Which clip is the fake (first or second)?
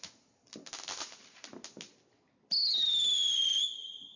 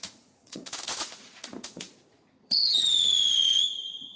second